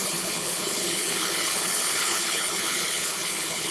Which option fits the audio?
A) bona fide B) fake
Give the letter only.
B